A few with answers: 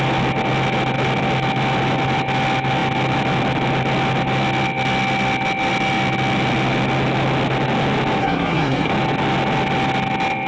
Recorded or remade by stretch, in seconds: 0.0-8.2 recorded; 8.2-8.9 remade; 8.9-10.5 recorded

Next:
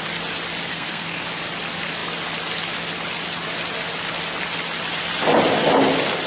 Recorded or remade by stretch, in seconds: 0.0-0.7 recorded; 0.7-1.2 remade; 1.2-6.3 recorded

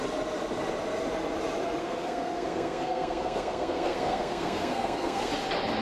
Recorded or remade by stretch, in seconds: 0.0-1.8 recorded; 1.8-5.3 remade; 5.3-5.8 recorded

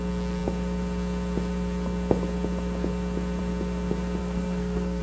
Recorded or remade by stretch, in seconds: 0.0-4.2 recorded; 4.2-5.0 remade